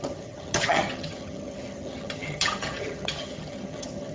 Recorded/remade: remade